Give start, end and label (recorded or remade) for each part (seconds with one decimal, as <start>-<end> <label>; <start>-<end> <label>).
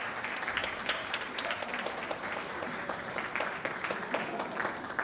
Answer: 0.0-0.6 recorded; 0.6-3.6 remade; 3.6-5.0 recorded